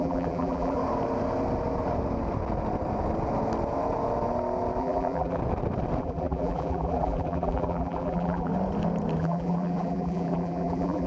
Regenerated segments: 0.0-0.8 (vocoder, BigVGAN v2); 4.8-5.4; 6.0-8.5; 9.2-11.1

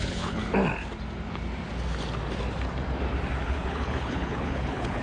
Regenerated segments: 0.0-0.4 (codec, HILCodec); 3.4-5.0

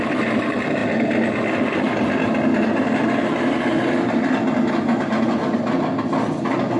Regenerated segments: none

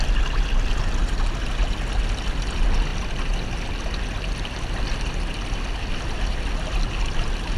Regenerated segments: none

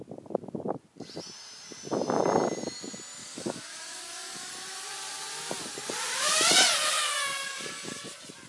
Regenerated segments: 3.2-4.5 (codec, DAC); 7.1-8.0